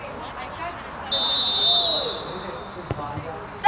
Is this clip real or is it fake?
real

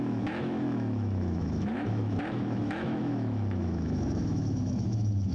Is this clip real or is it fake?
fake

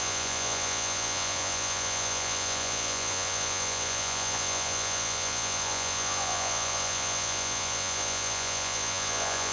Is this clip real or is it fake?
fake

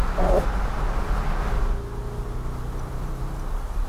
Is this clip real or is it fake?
real